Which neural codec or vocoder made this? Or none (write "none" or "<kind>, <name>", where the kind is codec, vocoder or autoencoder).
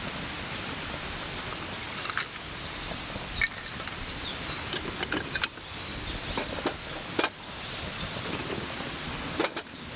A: none